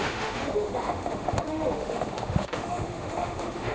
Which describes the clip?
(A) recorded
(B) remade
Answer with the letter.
B